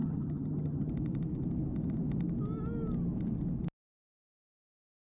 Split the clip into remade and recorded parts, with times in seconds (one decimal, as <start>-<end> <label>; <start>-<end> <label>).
0.0-0.9 remade; 0.9-5.1 recorded